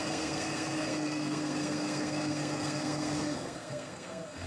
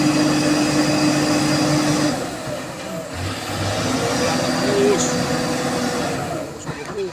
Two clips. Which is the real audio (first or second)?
second